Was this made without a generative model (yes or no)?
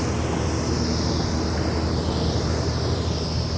yes